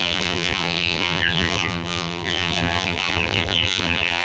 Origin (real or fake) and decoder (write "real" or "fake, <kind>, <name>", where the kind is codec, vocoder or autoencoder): fake, vocoder, BigVGAN v2